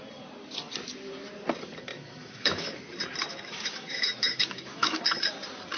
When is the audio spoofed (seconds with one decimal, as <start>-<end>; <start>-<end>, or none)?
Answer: 1.9-2.8; 3.3-5.0